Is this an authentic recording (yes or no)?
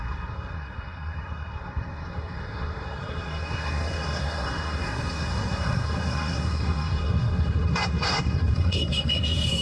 no